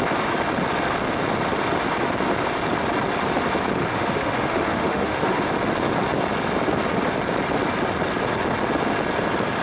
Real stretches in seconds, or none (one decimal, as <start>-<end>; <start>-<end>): 0.0-3.9; 5.4-9.6